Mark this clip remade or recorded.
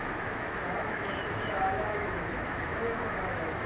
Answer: remade